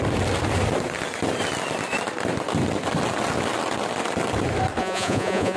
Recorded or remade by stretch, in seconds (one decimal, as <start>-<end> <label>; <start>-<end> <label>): 0.0-4.8 recorded; 4.8-5.6 remade